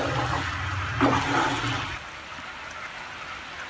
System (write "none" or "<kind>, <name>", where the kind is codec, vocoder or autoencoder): none